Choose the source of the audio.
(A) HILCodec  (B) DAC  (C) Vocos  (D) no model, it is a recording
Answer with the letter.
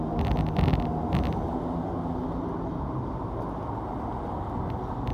D